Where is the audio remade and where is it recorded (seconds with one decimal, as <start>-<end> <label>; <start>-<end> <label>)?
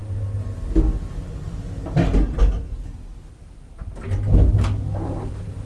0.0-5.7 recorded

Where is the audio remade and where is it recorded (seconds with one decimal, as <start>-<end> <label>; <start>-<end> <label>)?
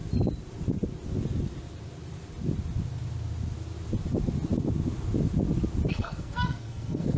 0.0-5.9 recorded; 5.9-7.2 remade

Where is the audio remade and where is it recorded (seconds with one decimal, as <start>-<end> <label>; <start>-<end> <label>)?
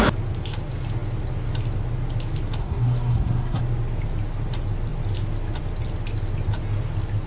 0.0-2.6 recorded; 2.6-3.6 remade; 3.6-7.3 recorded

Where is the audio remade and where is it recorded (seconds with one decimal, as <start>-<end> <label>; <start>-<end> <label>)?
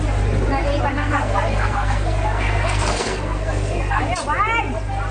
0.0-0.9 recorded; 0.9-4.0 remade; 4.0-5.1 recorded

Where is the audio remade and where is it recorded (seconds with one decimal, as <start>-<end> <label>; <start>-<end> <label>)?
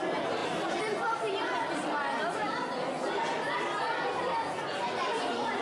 0.0-5.6 recorded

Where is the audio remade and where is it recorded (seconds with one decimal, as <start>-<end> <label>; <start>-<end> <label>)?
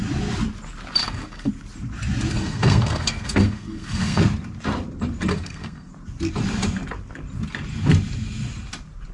0.0-1.0 recorded; 1.0-1.5 remade; 1.5-2.3 recorded; 2.3-4.2 remade; 4.2-5.3 recorded; 5.3-5.9 remade; 5.9-9.1 recorded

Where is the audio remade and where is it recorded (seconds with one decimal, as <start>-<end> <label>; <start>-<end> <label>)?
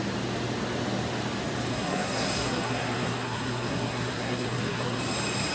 0.0-1.7 recorded; 1.7-5.0 remade; 5.0-5.5 recorded